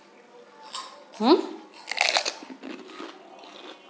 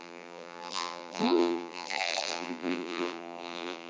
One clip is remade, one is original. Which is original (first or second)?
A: first